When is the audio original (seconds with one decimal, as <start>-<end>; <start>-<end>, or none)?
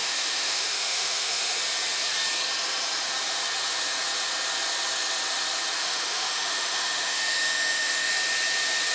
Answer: 1.6-5.8; 8.1-8.9